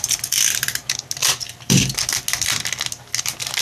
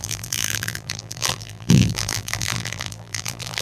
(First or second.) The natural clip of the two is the first